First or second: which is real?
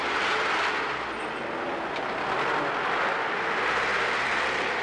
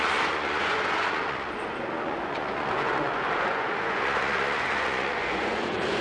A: first